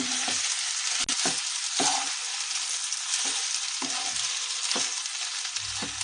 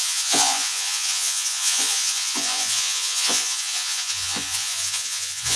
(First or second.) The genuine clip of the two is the first